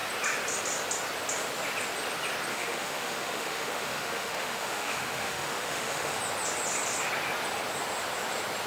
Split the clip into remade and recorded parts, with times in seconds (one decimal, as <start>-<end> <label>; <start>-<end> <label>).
0.0-2.5 recorded; 2.5-6.2 remade; 6.2-8.7 recorded